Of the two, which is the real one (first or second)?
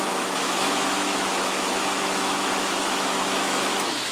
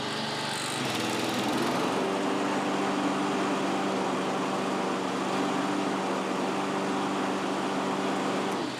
second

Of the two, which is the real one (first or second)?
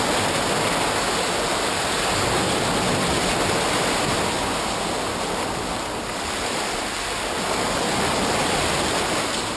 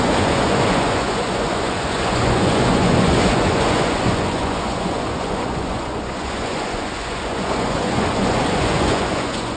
first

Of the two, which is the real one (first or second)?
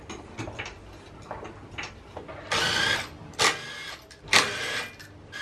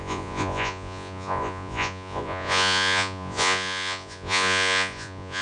first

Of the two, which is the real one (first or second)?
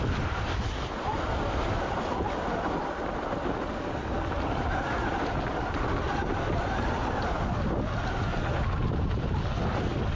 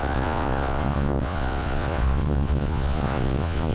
first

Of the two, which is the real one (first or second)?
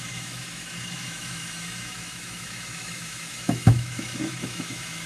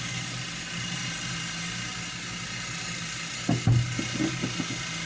second